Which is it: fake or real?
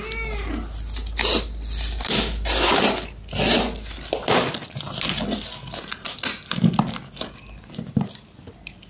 real